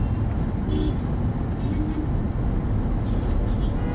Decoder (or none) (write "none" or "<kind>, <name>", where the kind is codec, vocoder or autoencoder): none